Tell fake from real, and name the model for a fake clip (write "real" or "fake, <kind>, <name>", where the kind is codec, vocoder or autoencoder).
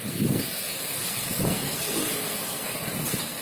fake, codec, SNAC